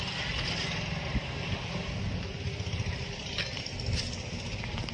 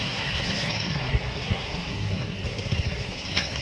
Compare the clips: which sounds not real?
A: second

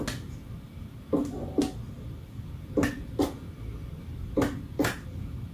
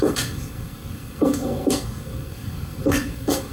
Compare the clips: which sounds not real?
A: second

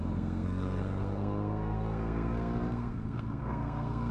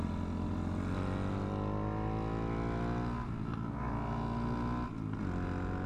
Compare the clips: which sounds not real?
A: first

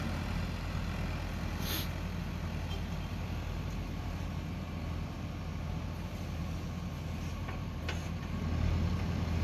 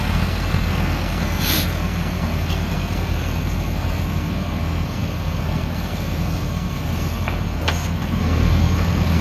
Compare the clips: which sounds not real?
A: second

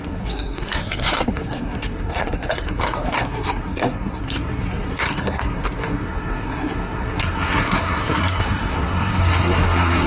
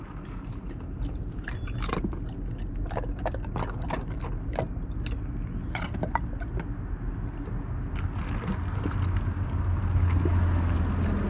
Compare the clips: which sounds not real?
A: first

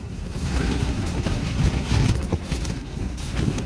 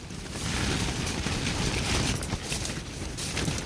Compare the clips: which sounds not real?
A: first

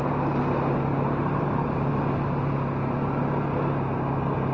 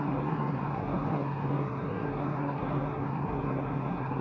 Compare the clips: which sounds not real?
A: second